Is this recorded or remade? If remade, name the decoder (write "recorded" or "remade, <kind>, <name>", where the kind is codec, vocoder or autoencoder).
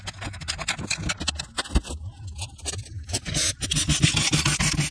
recorded